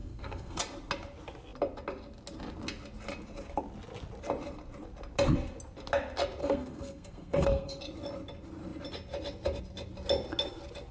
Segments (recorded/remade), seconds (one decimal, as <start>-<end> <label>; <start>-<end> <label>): 0.0-0.6 remade; 0.6-6.4 recorded; 6.4-7.8 remade; 7.8-10.9 recorded